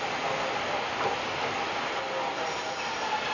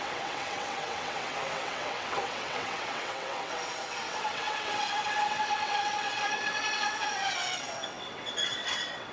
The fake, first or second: second